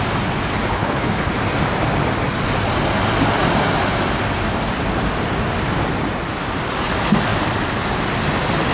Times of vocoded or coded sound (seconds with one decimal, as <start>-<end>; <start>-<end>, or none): 0.7-1.3